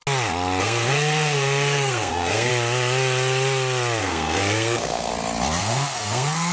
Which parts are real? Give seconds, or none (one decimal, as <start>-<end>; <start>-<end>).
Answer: 0.0-0.6; 2.5-4.0; 5.1-5.6